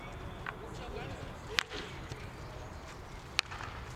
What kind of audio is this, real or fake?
real